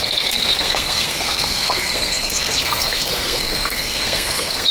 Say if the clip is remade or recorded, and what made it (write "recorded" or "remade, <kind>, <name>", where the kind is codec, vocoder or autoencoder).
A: remade, codec, SNAC